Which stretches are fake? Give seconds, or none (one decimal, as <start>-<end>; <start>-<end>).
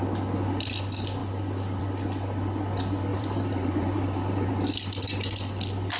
3.1-4.5